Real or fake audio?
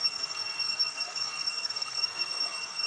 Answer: fake